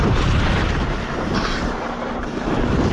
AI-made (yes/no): yes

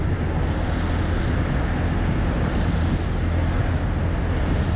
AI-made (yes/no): no